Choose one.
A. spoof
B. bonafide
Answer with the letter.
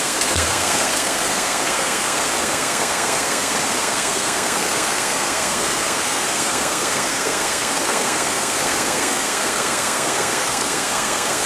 A